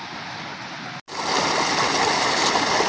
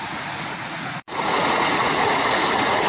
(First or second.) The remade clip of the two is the second